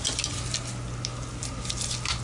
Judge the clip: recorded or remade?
recorded